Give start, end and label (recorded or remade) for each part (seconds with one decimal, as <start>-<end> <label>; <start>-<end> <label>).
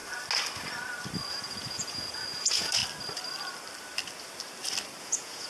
0.0-1.3 recorded; 1.3-2.8 remade; 2.8-5.0 recorded; 5.0-5.5 remade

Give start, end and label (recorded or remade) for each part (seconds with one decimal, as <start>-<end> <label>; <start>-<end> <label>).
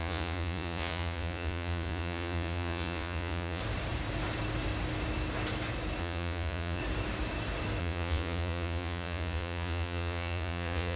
0.0-3.6 remade; 3.6-6.0 recorded; 6.0-6.8 remade; 6.8-7.8 recorded; 7.8-11.0 remade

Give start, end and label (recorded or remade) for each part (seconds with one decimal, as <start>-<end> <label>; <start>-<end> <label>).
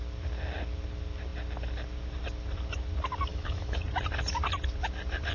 0.0-3.3 recorded; 3.3-3.8 remade; 3.8-5.3 recorded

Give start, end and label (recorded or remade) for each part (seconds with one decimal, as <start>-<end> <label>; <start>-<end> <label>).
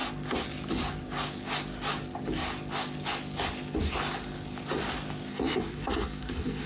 0.0-5.3 recorded; 5.3-6.7 remade